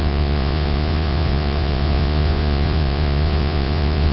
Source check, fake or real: fake